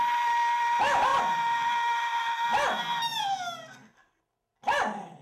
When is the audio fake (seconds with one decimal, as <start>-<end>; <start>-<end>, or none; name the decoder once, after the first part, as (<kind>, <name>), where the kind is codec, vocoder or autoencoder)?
none